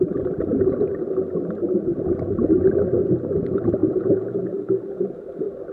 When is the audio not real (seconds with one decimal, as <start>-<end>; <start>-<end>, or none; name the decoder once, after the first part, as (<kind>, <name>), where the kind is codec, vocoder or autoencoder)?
3.8-4.4 (vocoder, Vocos)